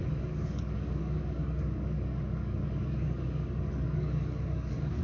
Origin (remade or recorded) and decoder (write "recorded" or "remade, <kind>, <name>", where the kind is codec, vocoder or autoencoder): remade, codec, DAC